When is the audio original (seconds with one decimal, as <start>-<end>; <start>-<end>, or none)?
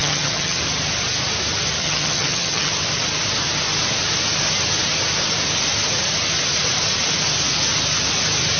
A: 0.6-1.8; 2.7-8.6